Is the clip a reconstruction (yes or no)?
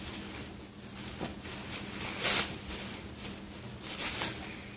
no